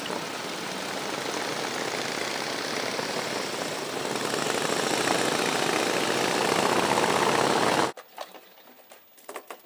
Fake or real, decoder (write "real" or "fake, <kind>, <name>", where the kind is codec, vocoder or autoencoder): real